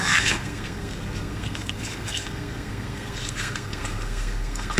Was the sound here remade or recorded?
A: remade